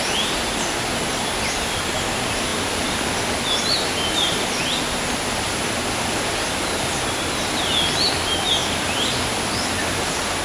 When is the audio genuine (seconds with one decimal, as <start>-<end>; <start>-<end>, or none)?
0.0-1.1; 1.8-2.5; 3.2-8.6; 9.2-10.4